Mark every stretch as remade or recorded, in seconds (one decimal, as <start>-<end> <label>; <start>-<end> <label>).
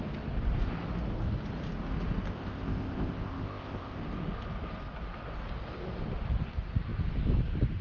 0.0-2.3 recorded; 2.3-4.0 remade; 4.0-7.8 recorded